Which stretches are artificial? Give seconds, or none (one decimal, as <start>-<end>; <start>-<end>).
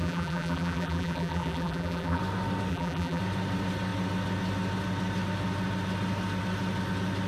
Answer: 0.0-2.2; 2.7-3.2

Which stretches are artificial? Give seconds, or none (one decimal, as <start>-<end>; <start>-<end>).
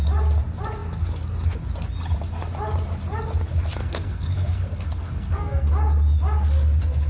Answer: 3.8-5.7